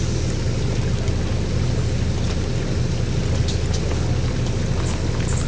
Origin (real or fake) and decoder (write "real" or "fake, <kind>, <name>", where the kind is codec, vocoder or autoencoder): real